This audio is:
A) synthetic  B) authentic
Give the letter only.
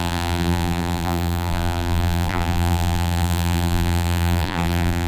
A